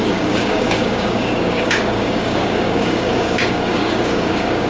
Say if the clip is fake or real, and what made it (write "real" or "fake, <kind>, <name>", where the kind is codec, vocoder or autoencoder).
fake, codec, DAC